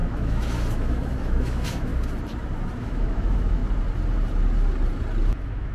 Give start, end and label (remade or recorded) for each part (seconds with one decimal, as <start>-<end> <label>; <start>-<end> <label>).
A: 0.0-1.9 remade; 1.9-2.7 recorded; 2.7-3.6 remade; 3.6-5.3 recorded; 5.3-5.7 remade